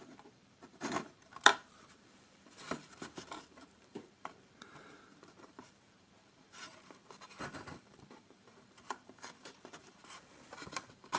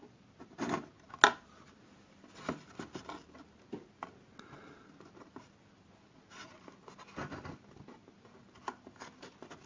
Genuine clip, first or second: second